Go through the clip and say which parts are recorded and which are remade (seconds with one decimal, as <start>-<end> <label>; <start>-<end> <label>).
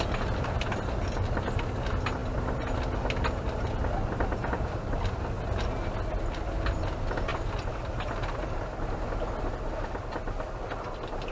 0.0-11.3 recorded